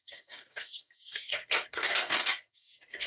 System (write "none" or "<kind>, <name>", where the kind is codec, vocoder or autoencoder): codec, DAC